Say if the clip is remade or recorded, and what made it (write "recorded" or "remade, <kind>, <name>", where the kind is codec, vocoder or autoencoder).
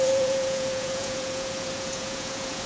remade, vocoder, Vocos